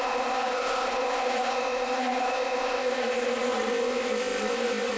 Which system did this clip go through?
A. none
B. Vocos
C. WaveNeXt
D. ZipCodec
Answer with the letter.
D